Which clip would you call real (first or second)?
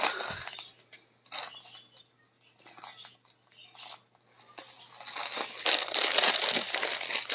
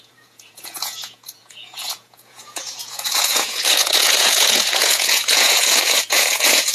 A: first